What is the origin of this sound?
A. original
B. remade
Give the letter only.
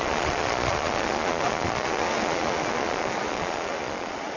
B